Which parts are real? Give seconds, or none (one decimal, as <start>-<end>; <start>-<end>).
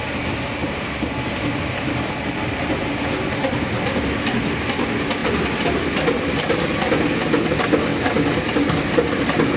0.0-0.6; 2.6-9.6